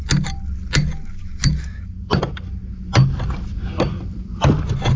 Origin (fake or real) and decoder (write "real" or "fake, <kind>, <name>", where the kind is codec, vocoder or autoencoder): real